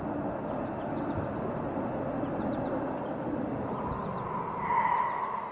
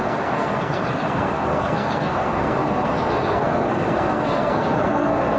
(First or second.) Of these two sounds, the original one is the first